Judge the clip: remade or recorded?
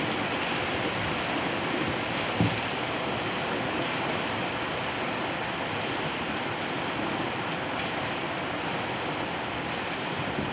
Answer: recorded